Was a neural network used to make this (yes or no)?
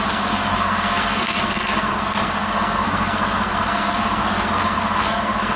yes